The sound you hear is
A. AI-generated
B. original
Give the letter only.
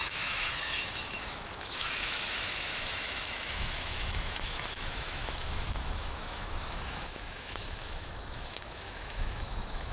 A